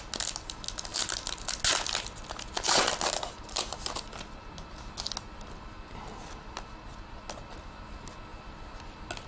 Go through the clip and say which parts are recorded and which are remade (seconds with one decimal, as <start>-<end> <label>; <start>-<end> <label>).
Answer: 0.0-9.3 recorded